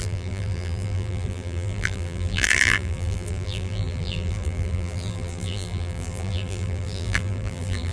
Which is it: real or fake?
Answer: fake